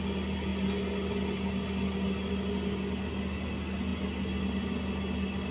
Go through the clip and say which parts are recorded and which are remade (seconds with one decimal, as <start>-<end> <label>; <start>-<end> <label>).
0.0-5.5 recorded